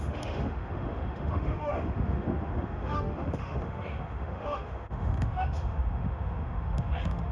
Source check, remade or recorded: remade